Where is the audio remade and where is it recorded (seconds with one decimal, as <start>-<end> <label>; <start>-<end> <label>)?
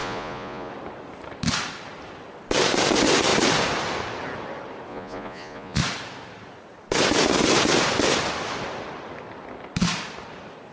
0.0-0.7 remade; 0.7-4.9 recorded; 4.9-5.8 remade; 5.8-10.7 recorded